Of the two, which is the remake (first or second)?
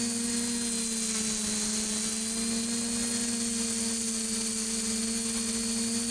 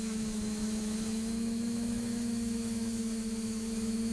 second